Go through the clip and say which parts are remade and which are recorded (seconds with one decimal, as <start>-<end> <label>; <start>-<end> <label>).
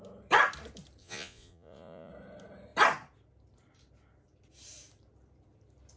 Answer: 0.0-1.0 recorded; 1.0-2.1 remade; 2.1-6.0 recorded